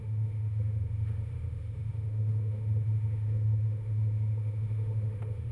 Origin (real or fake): fake